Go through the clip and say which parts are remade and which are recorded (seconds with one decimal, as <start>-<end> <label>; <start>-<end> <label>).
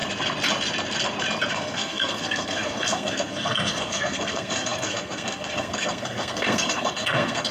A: 0.0-1.5 recorded; 1.5-7.5 remade